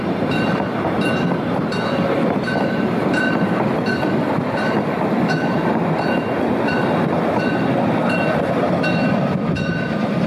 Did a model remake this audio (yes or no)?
no